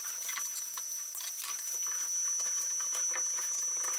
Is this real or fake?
real